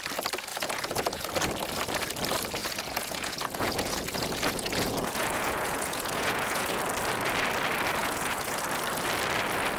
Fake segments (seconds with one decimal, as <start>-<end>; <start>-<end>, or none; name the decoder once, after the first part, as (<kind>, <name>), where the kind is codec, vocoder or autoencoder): 0.5-1.3 (vocoder, Vocos); 2.6-6.8; 8.0-8.6